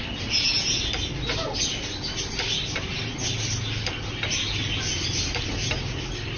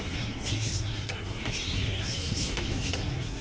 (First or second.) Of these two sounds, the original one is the first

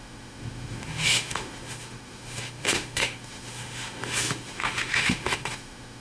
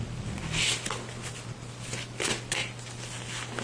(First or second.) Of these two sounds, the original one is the second